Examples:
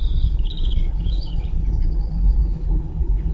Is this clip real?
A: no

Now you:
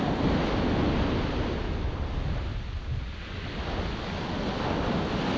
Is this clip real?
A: yes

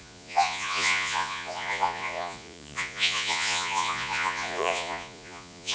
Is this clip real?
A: no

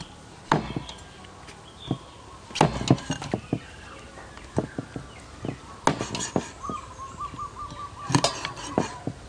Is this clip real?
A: yes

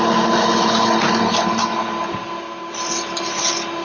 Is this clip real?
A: yes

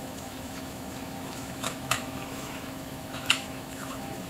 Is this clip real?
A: no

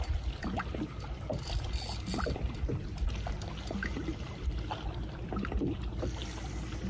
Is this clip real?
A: yes